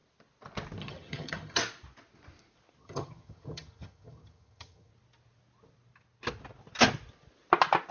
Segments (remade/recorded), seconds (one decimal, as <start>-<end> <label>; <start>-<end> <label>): 0.0-0.8 recorded; 0.8-1.6 remade; 1.6-2.8 recorded; 2.8-4.9 remade; 4.9-7.9 recorded